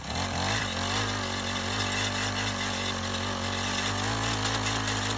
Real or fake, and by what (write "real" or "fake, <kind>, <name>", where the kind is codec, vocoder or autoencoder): real